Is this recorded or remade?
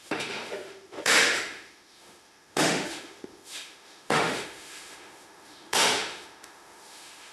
remade